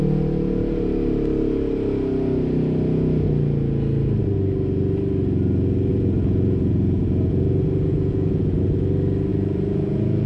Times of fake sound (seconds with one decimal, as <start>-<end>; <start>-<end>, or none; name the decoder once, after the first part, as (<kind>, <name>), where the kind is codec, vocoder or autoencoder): 5.9-8.6 (vocoder, Vocos); 9.3-10.3